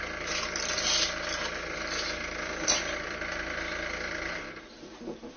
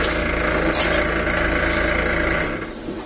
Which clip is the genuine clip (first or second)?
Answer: second